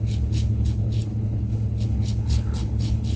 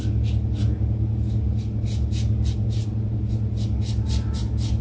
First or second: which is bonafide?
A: second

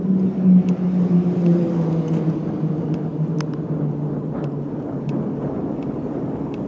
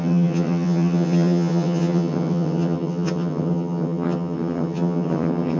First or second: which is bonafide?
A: first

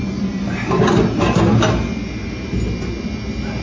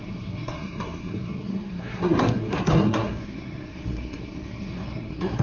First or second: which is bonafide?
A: first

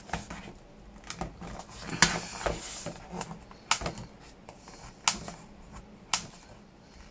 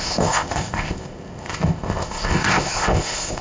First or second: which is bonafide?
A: first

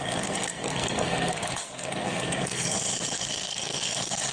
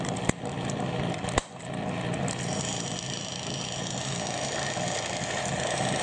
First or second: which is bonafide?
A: second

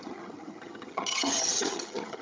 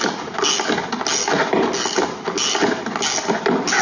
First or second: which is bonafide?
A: second